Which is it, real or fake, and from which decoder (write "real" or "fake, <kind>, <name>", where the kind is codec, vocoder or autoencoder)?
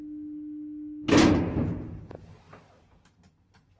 real